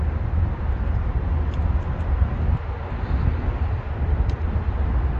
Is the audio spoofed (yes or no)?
no